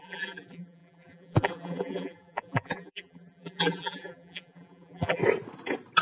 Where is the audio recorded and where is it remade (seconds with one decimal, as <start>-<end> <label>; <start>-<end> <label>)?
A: 0.0-5.2 remade; 5.2-6.0 recorded